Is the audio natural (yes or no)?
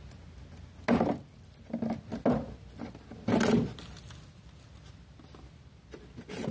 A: yes